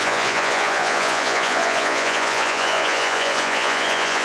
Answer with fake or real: fake